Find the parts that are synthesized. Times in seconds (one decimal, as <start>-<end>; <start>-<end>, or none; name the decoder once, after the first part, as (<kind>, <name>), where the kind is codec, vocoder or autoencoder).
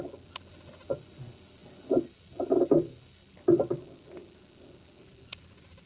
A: none